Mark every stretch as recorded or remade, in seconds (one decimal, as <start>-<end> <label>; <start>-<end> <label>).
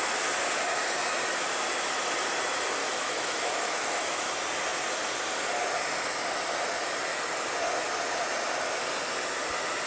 0.0-2.8 recorded; 2.8-4.3 remade; 4.3-9.9 recorded